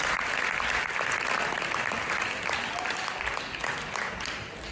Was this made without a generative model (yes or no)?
yes